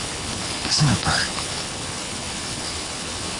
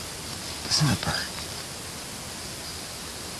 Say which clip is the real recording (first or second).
second